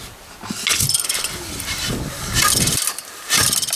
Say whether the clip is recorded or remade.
recorded